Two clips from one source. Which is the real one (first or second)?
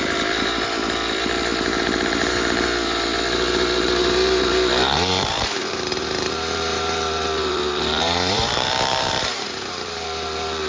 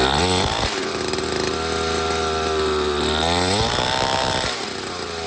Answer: second